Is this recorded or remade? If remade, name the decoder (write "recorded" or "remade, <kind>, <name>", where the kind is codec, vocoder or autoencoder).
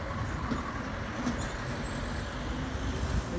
recorded